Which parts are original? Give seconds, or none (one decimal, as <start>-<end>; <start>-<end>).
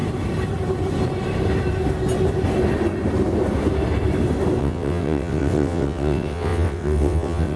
0.0-4.6